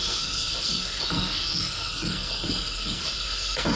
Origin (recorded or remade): remade